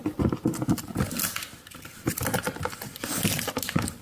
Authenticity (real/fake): real